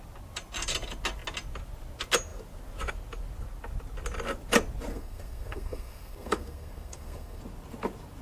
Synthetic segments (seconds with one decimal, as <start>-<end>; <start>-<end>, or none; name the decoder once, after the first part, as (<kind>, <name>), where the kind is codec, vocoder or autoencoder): 4.9-7.4 (codec, SNAC)